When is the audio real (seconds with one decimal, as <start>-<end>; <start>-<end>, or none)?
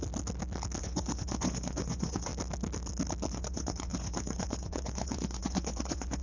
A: 0.0-0.8; 2.3-3.3